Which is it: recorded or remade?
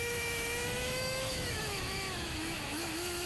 remade